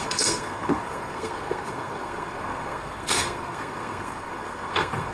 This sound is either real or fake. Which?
fake